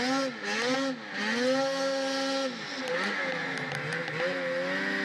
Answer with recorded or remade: recorded